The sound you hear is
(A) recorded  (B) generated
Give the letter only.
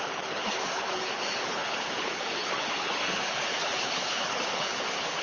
B